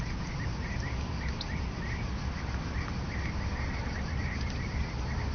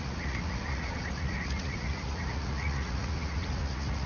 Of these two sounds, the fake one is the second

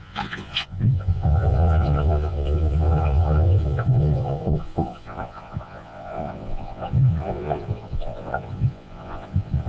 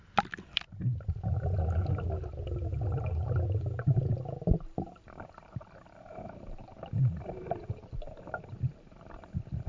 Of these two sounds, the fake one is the first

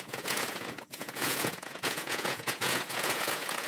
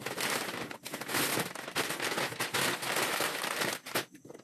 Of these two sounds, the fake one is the first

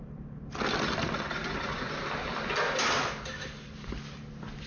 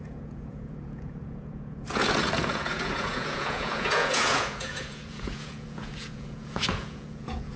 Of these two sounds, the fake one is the second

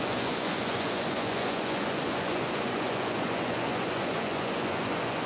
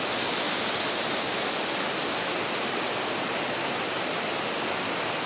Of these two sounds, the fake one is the first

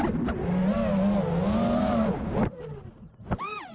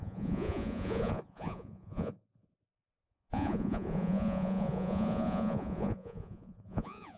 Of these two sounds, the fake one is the second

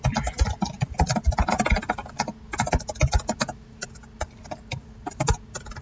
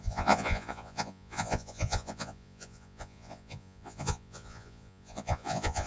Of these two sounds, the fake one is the second